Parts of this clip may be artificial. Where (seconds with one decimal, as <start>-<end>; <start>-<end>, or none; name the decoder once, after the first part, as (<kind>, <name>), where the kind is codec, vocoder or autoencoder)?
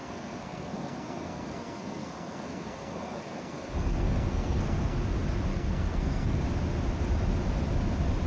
0.0-5.0 (codec, SNAC); 5.5-6.4